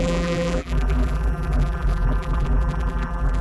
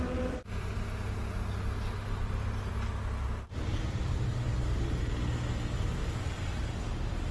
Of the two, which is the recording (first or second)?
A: second